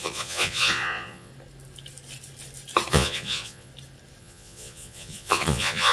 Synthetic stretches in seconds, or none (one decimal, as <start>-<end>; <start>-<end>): 0.0-1.3; 2.9-3.7; 4.2-5.9